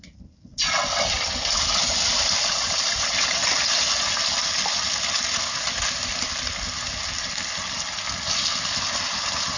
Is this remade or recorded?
recorded